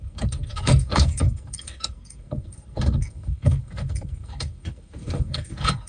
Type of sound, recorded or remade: remade